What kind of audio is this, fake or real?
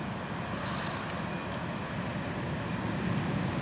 real